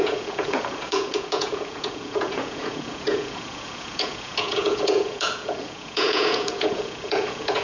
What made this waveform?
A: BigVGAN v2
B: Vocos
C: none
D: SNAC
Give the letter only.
B